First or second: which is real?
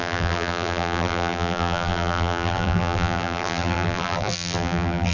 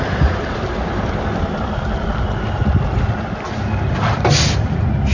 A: second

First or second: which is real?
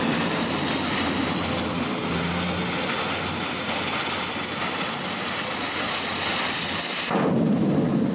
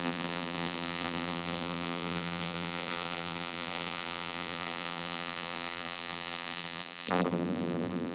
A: first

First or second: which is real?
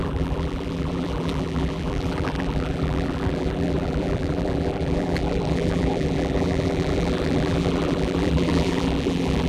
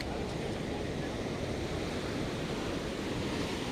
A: second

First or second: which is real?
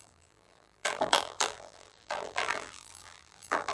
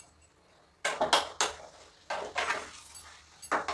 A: second